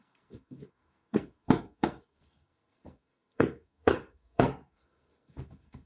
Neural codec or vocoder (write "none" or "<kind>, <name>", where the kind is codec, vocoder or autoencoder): codec, SNAC